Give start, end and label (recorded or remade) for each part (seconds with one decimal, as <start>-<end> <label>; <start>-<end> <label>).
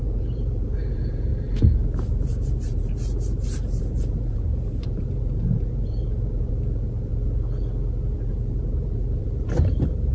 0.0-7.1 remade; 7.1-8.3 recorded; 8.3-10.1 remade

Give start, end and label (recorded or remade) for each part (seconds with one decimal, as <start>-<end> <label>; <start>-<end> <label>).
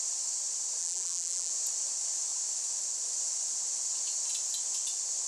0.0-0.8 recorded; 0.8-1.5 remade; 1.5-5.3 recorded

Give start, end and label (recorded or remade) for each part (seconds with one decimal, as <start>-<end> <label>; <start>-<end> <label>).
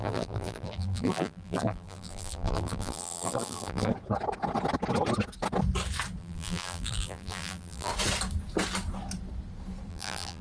0.0-3.9 remade; 3.9-6.2 recorded; 6.2-7.9 remade; 7.9-9.9 recorded; 9.9-10.4 remade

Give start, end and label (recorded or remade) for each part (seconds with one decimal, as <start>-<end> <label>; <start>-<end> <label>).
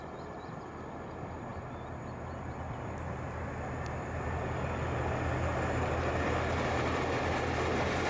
0.0-8.1 recorded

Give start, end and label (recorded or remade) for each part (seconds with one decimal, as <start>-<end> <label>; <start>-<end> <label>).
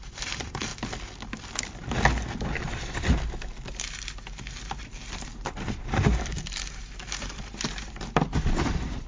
0.0-0.7 remade; 0.7-3.7 recorded; 3.7-9.1 remade